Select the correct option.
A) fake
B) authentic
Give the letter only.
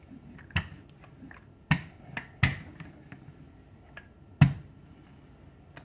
B